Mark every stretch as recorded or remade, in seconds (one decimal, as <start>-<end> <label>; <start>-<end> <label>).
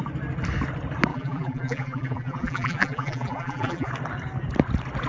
0.0-1.1 recorded; 1.1-3.9 remade; 3.9-5.1 recorded